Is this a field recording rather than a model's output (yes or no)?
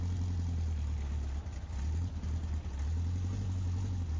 yes